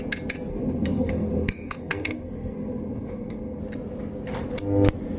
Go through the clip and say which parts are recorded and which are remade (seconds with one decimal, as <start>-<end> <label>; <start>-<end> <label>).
0.0-0.5 recorded; 0.5-3.6 remade; 3.6-5.2 recorded